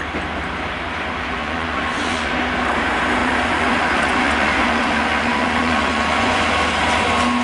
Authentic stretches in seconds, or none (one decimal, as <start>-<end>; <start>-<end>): 0.0-1.4; 2.3-3.2; 6.5-7.4